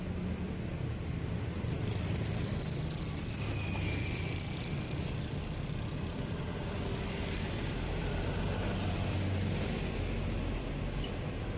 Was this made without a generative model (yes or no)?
yes